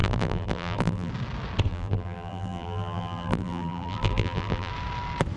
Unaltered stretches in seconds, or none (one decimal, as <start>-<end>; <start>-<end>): 1.1-1.7; 4.7-5.4